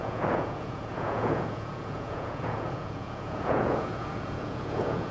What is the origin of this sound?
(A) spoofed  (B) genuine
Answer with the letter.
A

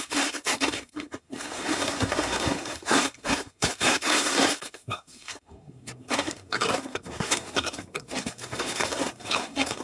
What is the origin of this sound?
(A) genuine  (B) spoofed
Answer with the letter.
B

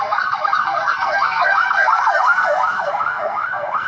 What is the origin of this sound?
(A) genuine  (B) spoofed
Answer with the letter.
B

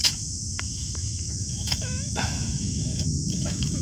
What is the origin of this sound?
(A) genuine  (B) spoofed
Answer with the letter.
B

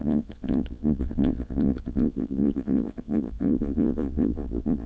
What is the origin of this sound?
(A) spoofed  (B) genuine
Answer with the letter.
A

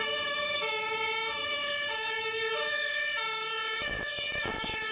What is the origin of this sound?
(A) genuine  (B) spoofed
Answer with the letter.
B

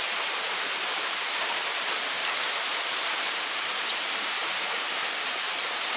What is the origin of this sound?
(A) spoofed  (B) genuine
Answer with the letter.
A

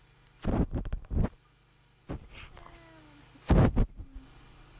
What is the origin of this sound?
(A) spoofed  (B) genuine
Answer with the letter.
B